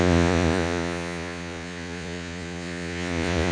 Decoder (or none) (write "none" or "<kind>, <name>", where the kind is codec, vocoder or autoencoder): vocoder, Vocos